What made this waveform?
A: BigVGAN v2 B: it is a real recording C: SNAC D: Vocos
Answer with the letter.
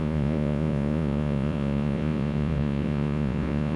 D